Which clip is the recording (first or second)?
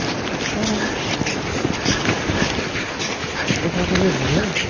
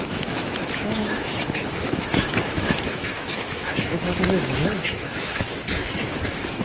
first